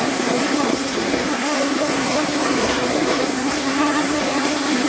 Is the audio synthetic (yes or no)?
yes